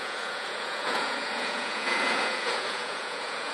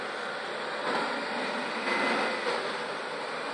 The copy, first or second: first